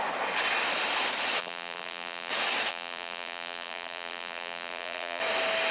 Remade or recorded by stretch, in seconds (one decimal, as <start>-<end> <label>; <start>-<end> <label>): 0.0-1.4 recorded; 1.4-2.3 remade; 2.3-2.7 recorded; 2.7-5.2 remade; 5.2-5.7 recorded